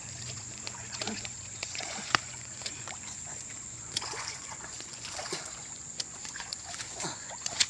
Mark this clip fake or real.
fake